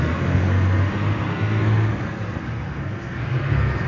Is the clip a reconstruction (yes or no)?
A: yes